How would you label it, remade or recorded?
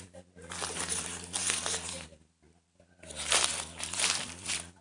recorded